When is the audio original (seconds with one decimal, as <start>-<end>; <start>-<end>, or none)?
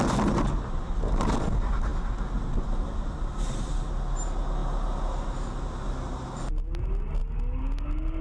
0.0-8.2